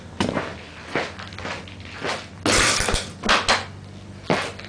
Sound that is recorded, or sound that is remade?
recorded